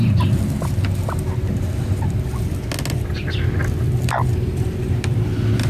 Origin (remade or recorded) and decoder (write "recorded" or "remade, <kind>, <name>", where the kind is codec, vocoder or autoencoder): recorded